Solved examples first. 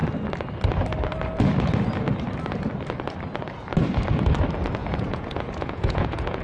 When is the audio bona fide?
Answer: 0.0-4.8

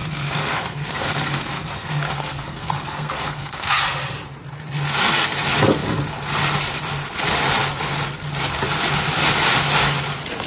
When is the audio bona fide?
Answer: 3.8-10.5

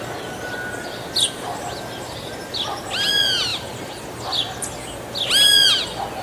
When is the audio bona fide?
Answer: 0.0-3.5; 5.1-6.2

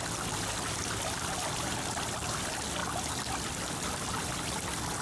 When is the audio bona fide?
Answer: 0.0-5.0

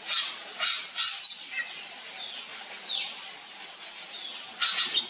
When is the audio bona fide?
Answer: 0.0-5.1

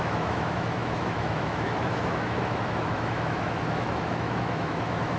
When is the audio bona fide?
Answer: none

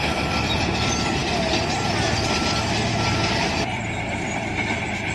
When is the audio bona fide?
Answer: none

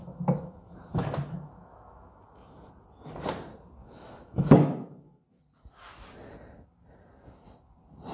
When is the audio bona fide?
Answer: 2.7-3.8; 5.4-8.1